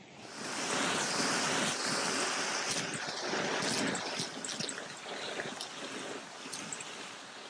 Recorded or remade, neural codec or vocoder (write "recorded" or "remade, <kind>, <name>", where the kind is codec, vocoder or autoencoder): recorded